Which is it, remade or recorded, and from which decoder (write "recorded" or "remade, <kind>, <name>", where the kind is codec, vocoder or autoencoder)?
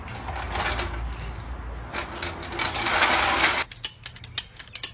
recorded